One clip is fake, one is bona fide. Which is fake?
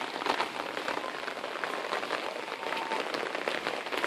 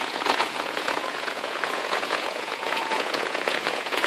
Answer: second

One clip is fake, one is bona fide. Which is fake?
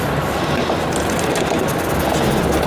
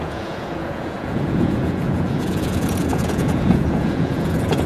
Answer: second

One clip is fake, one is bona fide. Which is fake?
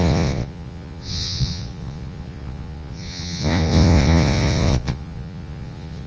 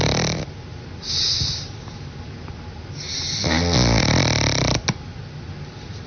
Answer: first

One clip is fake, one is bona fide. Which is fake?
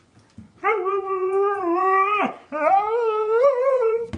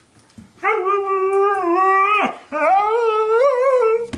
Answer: first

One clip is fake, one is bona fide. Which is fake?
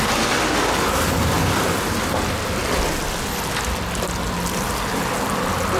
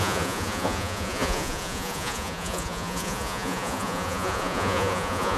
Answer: second